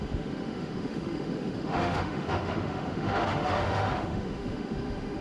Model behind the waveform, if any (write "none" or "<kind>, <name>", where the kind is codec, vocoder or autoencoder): autoencoder, DAC-VAE